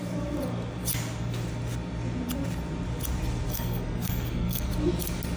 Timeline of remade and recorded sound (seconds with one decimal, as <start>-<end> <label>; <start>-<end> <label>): 0.0-3.5 recorded; 3.5-4.7 remade; 4.7-5.4 recorded